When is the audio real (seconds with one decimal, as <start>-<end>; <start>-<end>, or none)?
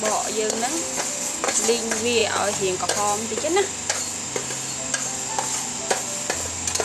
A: 0.0-6.8